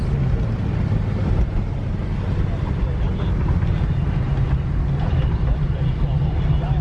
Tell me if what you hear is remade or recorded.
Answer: recorded